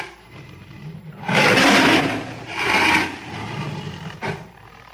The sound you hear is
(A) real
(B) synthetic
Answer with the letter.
B